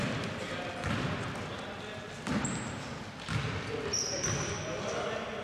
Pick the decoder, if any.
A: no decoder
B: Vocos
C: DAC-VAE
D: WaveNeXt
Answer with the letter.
A